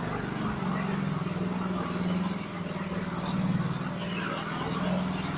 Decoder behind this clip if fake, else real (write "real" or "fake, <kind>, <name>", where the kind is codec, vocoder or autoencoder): real